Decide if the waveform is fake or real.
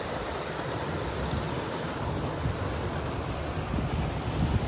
real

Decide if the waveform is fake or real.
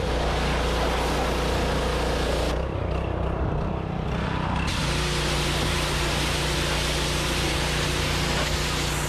real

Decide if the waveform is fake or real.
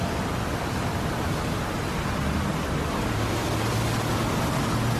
real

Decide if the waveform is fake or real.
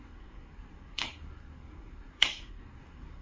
fake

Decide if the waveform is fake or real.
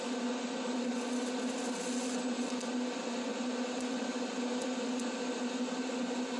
real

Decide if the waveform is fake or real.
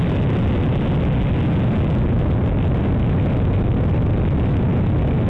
real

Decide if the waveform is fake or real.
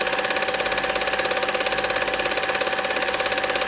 real